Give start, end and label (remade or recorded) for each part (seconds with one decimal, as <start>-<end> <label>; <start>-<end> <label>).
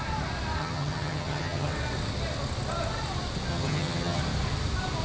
0.0-0.6 recorded; 0.6-1.7 remade; 1.7-3.5 recorded; 3.5-4.2 remade; 4.2-5.0 recorded